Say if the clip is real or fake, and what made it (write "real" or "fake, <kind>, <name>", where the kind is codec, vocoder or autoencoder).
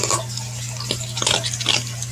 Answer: real